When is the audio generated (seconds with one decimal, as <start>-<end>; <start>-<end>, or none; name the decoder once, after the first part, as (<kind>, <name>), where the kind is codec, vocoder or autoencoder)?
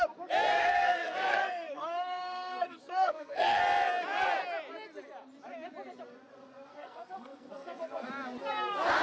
0.6-3.6 (codec, SNAC); 6.7-8.1